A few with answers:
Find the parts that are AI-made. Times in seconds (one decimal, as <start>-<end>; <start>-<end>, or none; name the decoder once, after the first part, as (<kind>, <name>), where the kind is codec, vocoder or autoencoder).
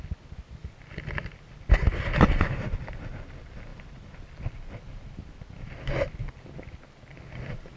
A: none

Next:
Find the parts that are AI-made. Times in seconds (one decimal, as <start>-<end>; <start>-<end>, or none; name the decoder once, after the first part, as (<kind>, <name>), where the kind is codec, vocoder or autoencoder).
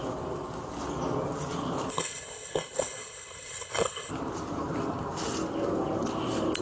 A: 1.9-4.1 (codec, HILCodec)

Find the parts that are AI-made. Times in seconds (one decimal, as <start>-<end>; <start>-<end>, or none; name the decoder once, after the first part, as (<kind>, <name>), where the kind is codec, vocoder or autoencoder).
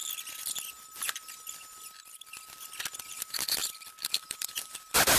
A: 3.6-5.2 (vocoder, BigVGAN v2)